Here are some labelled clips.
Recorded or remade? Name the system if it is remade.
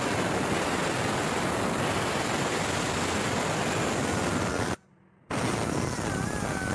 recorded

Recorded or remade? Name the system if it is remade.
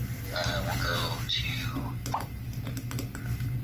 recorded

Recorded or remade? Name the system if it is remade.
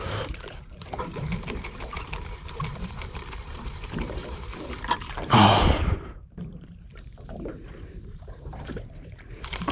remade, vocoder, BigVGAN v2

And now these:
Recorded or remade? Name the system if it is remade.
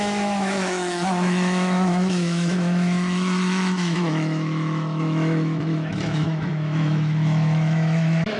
remade, autoencoder, DAC-VAE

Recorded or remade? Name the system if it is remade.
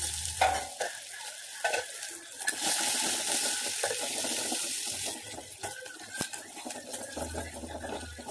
recorded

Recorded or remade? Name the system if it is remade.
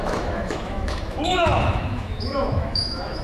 remade, autoencoder, DAC-VAE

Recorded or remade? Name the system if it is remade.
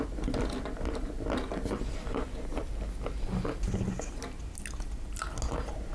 recorded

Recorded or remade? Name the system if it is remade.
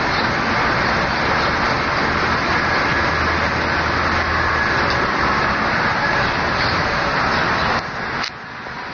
recorded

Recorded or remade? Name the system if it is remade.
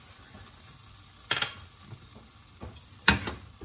recorded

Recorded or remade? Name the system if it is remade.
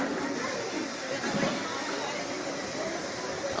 remade, vocoder, BigVGAN v2